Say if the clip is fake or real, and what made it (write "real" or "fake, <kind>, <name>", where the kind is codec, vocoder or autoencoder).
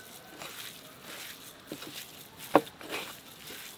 real